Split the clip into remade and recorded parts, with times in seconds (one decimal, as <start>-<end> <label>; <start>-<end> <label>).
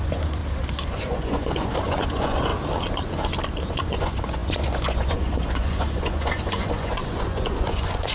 0.0-0.4 remade; 0.4-0.9 recorded; 0.9-2.5 remade; 2.5-3.7 recorded; 3.7-8.1 remade